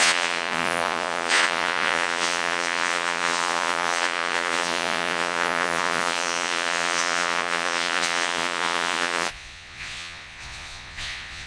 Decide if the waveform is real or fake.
fake